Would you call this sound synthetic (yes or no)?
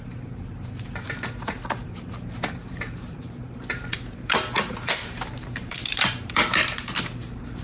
yes